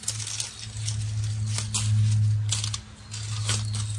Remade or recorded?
recorded